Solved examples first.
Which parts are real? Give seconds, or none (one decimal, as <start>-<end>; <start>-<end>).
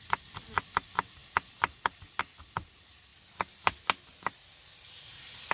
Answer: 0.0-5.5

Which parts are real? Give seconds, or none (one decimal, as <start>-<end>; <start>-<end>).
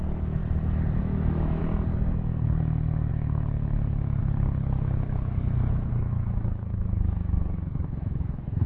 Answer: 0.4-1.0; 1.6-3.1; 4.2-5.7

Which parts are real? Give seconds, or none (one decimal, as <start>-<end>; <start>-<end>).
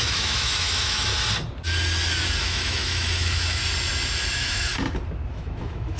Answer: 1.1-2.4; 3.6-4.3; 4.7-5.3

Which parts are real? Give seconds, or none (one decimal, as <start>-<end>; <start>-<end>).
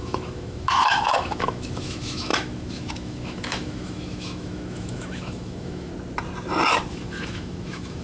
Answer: 5.9-6.9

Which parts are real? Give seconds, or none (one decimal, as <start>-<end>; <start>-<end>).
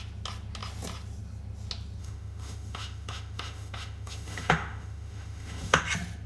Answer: 0.0-2.0; 5.8-6.3